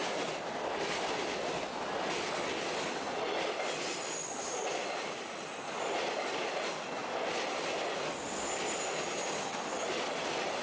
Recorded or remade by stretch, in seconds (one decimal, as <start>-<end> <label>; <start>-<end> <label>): 0.0-10.6 recorded